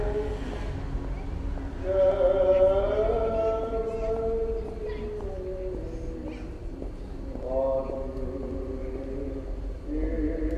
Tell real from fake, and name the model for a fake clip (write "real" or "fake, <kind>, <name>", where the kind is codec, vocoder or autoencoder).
real